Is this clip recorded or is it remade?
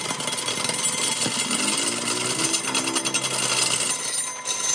recorded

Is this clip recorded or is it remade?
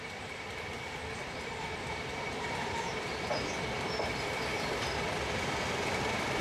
remade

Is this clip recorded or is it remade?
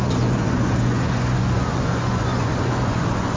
remade